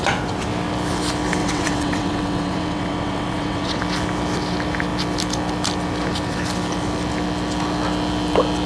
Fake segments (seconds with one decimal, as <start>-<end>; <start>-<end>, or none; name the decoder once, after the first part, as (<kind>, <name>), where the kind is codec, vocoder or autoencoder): 1.4-3.8 (vocoder, WaveNeXt)